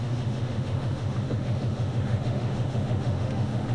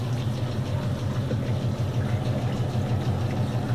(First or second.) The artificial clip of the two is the first